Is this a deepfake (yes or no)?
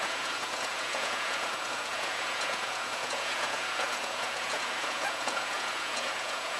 yes